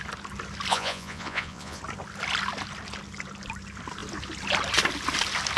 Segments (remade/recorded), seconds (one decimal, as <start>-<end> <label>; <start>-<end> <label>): 0.0-0.7 recorded; 0.7-1.8 remade; 1.8-5.6 recorded